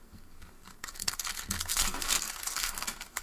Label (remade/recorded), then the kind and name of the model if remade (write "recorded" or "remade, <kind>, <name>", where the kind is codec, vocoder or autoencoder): remade, codec, SNAC